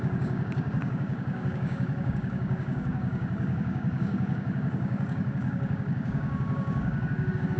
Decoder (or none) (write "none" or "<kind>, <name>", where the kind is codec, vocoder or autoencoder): codec, DAC